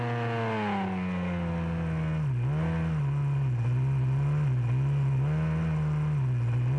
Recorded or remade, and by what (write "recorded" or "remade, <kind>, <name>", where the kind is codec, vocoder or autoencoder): recorded